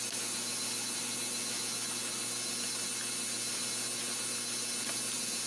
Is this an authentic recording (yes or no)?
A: yes